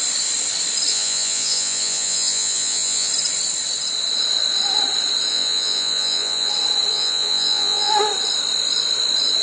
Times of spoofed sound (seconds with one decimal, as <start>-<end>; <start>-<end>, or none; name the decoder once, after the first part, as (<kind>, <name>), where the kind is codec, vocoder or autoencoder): 0.9-3.1 (vocoder, Vocos); 5.3-6.5; 6.9-7.9